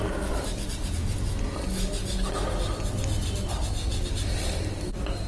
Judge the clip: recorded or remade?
recorded